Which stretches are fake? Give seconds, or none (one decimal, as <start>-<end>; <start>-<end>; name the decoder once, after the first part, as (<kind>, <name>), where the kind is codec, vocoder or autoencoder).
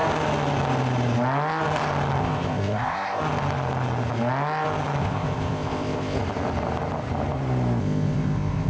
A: 2.2-3.2 (codec, ZipCodec); 5.0-6.2; 7.8-8.7